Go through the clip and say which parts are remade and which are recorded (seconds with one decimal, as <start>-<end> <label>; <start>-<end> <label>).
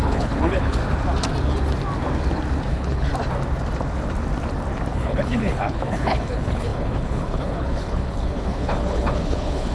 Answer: 0.0-0.8 remade; 0.8-2.7 recorded; 2.7-3.1 remade; 3.1-4.9 recorded; 4.9-9.7 remade